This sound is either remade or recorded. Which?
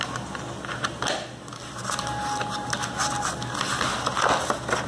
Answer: recorded